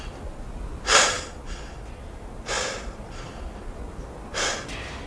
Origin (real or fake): real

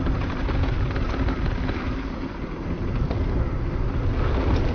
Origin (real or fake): real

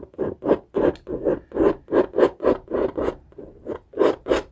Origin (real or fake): real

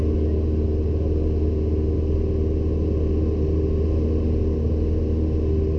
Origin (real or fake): real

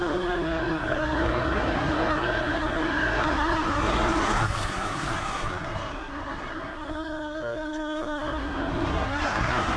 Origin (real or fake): fake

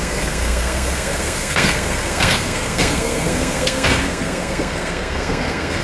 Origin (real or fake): fake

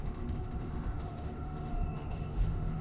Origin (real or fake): fake